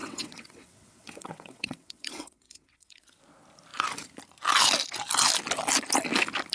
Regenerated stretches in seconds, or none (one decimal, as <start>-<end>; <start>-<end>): 0.0-3.2